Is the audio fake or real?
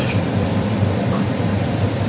fake